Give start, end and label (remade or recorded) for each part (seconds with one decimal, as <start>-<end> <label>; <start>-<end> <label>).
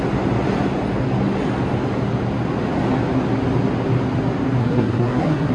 0.0-4.6 recorded; 4.6-5.5 remade